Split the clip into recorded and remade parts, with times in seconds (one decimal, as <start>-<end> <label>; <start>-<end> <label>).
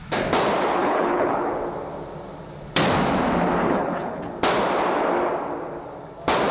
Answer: 0.0-0.8 recorded; 0.8-1.5 remade; 1.5-3.6 recorded; 3.6-4.3 remade; 4.3-6.5 recorded